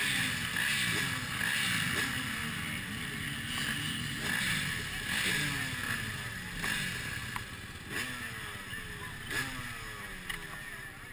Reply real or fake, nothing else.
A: real